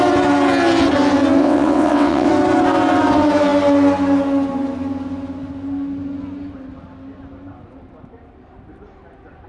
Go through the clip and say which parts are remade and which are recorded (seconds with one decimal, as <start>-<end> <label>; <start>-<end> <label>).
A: 0.0-1.4 recorded; 1.4-2.3 remade; 2.3-9.5 recorded